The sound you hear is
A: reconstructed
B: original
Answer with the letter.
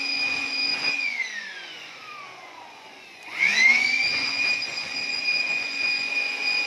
A